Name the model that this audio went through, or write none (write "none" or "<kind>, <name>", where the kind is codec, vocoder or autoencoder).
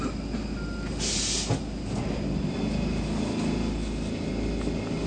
none